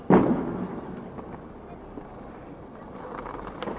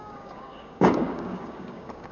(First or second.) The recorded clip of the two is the first